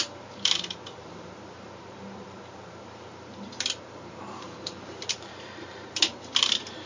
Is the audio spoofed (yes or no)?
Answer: yes